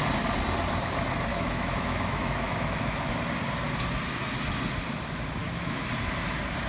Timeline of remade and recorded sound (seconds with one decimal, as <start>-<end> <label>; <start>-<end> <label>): 0.0-1.3 recorded; 1.3-3.1 remade; 3.1-5.4 recorded; 5.4-5.9 remade; 5.9-6.7 recorded